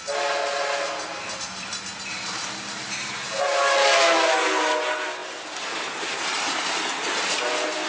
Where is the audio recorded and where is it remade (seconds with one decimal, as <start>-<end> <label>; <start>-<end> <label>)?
0.0-7.9 recorded